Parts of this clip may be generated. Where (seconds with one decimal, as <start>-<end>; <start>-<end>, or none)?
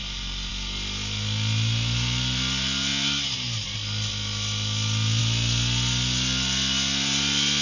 none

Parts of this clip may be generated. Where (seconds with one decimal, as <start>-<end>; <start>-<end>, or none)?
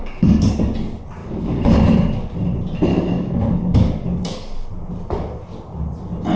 0.0-0.6; 1.2-2.3; 2.9-4.7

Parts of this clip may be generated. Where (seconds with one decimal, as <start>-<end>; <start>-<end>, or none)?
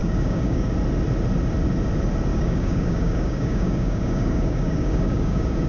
0.0-0.7; 2.3-5.7